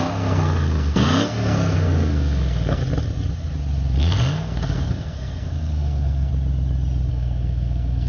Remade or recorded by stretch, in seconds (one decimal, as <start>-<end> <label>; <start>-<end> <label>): 0.0-2.8 remade; 2.8-4.0 recorded; 4.0-6.3 remade; 6.3-7.1 recorded; 7.1-8.1 remade